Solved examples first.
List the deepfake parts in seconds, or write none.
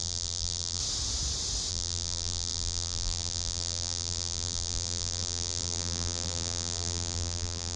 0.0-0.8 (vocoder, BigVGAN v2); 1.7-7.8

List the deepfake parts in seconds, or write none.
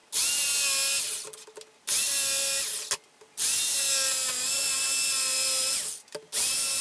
none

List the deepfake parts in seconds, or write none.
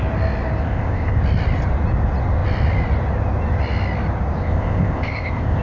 0.6-1.2 (codec, ZipCodec); 4.4-5.6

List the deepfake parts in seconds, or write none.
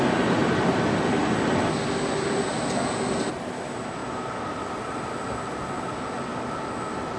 none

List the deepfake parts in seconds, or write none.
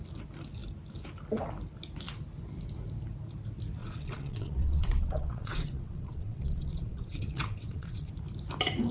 3.8-8.1 (vocoder, WaveNeXt)